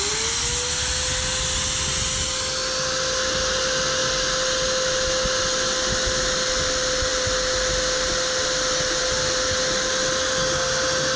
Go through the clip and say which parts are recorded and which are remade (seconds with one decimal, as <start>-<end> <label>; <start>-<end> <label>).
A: 0.0-11.2 recorded